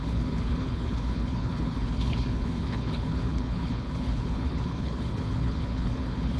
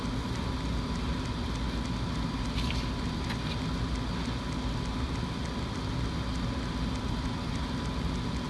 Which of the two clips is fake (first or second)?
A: first